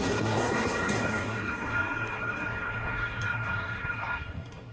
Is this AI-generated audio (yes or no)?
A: yes